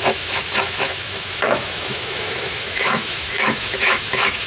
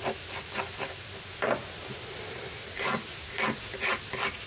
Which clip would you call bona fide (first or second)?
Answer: second